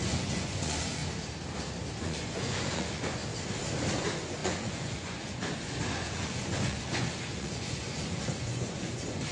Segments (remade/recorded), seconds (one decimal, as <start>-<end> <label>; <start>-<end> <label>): 0.0-1.0 remade; 1.0-2.0 recorded; 2.0-3.2 remade; 3.2-4.0 recorded; 4.0-9.3 remade